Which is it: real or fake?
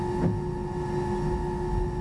real